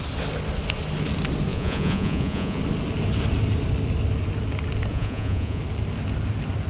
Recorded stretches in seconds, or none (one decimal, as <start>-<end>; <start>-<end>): 0.0-1.5; 2.6-4.9; 5.6-6.7